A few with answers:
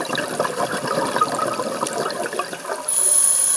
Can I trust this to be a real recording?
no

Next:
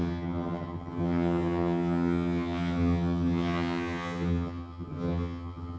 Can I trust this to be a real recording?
no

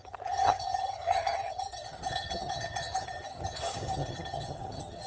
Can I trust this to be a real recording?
no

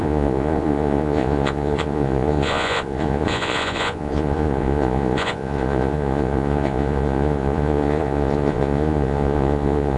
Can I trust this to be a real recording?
no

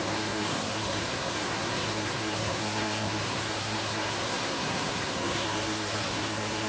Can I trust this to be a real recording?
no